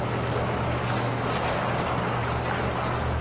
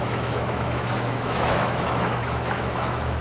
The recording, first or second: first